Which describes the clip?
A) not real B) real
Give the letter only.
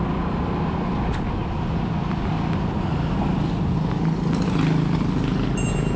B